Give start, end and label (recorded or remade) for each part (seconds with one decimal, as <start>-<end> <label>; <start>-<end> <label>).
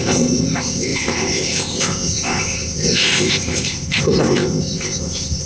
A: 0.0-5.5 remade